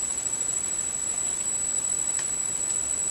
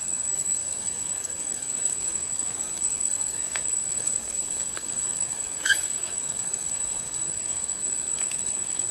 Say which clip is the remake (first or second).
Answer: second